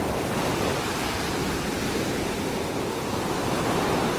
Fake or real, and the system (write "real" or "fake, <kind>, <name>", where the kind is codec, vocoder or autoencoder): real